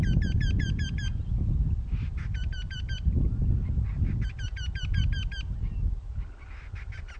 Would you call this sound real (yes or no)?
yes